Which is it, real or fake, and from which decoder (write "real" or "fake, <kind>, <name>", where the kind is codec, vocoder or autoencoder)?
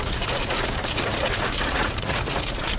fake, vocoder, Vocos